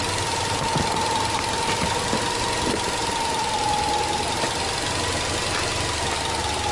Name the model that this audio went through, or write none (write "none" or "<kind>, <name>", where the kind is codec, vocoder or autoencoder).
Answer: none